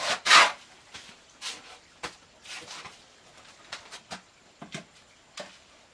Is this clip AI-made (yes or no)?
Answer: no